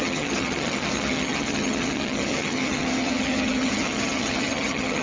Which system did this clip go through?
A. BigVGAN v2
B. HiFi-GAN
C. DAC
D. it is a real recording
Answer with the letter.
B